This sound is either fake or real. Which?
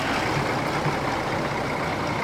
real